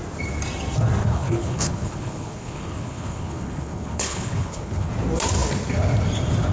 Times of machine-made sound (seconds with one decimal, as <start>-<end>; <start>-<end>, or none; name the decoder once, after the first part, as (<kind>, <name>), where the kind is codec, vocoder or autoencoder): 1.0-4.9 (codec, HILCodec)